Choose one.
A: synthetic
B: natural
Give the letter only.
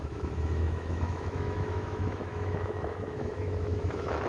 A